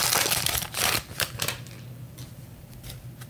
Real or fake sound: fake